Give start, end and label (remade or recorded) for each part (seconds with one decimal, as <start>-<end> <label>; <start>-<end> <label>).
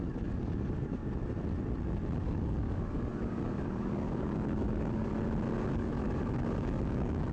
0.0-1.0 remade; 1.0-2.2 recorded; 2.2-5.1 remade; 5.1-5.7 recorded; 5.7-7.3 remade